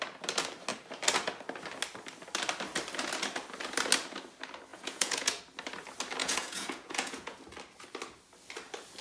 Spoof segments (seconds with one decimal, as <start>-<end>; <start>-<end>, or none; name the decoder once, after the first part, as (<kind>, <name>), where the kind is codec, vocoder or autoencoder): 4.7-5.4 (vocoder, Vocos); 6.2-7.4